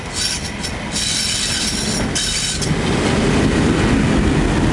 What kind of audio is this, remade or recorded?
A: recorded